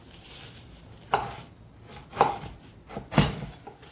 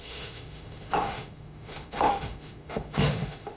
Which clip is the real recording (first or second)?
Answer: first